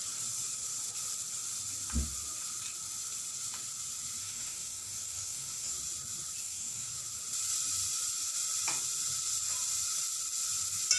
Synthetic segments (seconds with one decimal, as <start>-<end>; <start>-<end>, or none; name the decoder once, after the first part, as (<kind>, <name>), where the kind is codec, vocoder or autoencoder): 4.2-5.7 (codec, DAC); 6.4-6.9